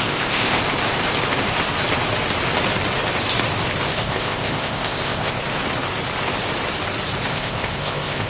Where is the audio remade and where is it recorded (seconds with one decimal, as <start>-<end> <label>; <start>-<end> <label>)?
0.0-0.6 remade; 0.6-3.9 recorded; 3.9-5.4 remade; 5.4-7.3 recorded; 7.3-8.3 remade